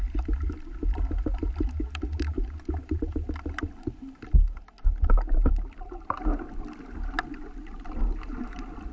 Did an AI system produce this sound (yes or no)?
no